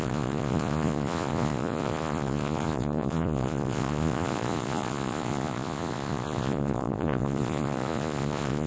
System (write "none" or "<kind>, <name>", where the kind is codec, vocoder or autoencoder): vocoder, Vocos